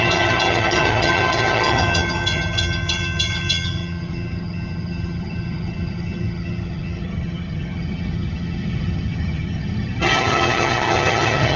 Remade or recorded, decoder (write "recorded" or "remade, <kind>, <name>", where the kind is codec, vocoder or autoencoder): remade, vocoder, HiFi-GAN